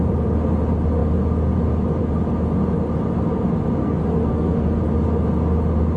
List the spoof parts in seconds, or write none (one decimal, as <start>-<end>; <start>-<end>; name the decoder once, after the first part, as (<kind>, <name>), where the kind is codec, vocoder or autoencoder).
3.8-4.8 (codec, SNAC)